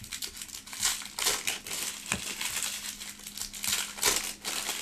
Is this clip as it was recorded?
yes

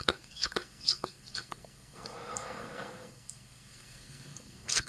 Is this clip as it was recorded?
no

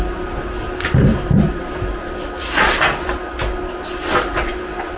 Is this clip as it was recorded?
yes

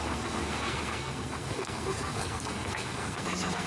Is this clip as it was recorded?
no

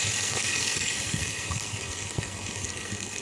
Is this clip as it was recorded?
no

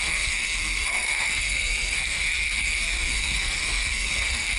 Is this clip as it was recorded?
no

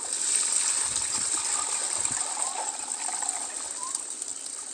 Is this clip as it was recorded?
yes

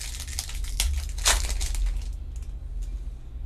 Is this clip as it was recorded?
yes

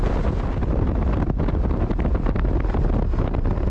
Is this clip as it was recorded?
yes